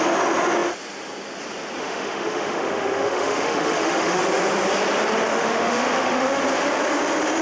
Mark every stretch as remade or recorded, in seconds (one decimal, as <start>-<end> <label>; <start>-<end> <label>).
0.0-1.8 recorded; 1.8-4.2 remade; 4.2-5.3 recorded; 5.3-6.4 remade; 6.4-7.4 recorded